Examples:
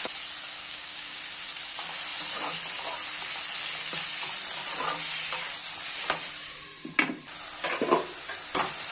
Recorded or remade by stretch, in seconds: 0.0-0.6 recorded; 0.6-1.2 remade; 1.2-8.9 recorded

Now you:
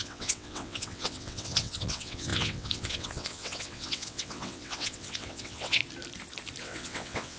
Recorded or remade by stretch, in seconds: 0.0-5.8 remade; 5.8-6.6 recorded; 6.6-7.4 remade

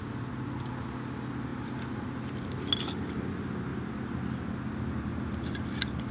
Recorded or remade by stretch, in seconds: 0.0-6.1 recorded

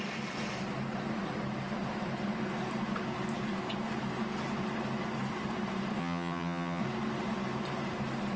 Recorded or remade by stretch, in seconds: 0.0-6.0 recorded; 6.0-6.8 remade; 6.8-8.4 recorded

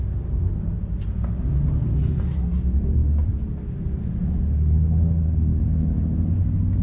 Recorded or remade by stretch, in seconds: 0.0-6.8 recorded